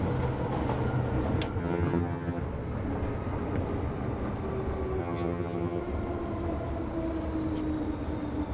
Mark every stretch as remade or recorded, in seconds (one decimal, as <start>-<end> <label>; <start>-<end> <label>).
0.0-1.6 recorded; 1.6-2.4 remade; 2.4-5.0 recorded; 5.0-5.8 remade; 5.8-8.5 recorded